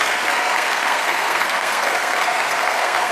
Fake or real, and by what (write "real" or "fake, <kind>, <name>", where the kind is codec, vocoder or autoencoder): fake, codec, SNAC